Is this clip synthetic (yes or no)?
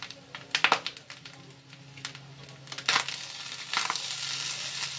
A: no